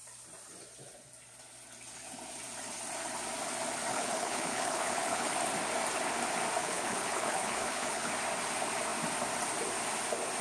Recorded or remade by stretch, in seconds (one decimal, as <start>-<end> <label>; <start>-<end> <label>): 0.0-3.9 recorded; 3.9-5.3 remade; 5.3-6.6 recorded; 6.6-8.1 remade; 8.1-10.4 recorded